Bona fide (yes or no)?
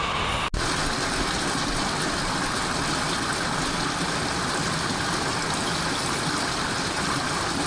yes